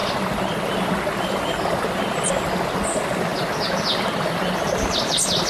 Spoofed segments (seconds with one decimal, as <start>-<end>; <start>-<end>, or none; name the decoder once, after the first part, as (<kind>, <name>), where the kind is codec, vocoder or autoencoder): none